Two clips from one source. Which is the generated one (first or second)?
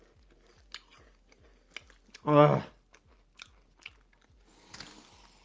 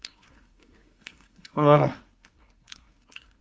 second